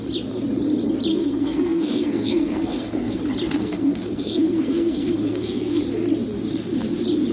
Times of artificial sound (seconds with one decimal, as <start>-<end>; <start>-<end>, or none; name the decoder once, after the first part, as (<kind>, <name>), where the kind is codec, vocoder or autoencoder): 1.1-3.2 (codec, SNAC); 3.6-5.8

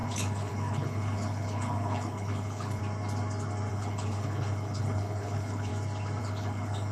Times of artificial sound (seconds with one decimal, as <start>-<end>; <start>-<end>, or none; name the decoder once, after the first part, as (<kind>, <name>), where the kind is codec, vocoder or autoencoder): 0.0-2.8 (codec, HILCodec); 3.7-5.7; 6.2-6.9

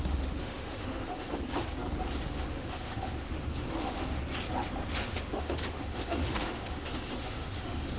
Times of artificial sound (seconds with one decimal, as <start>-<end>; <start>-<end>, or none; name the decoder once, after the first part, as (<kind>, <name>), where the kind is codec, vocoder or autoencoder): 0.0-1.4 (autoencoder, DAC-VAE); 2.3-4.2; 4.9-8.0

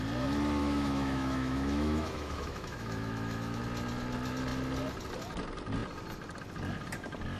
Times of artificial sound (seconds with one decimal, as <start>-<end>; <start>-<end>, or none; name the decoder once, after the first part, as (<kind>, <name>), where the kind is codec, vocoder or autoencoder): 0.6-3.6 (autoencoder, DAC-VAE)

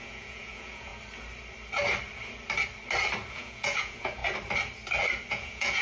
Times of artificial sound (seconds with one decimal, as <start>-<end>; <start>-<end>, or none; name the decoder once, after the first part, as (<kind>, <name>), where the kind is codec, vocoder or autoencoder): 0.0-0.9 (vocoder, Vocos); 3.3-4.2; 5.3-5.8

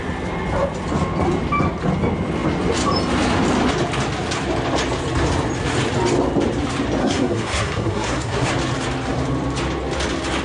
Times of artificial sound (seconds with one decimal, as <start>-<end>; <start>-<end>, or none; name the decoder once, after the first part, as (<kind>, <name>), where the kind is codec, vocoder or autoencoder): 7.0-8.5 (codec, SNAC)

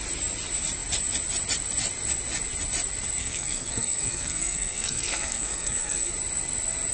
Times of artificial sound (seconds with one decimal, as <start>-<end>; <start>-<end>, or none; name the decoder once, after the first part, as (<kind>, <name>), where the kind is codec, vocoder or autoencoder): 3.2-6.1 (codec, SNAC)